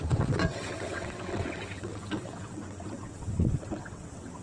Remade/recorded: remade